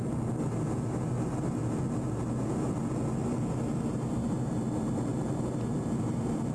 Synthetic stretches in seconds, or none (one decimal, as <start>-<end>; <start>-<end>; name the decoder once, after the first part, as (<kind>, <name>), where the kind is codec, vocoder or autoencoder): none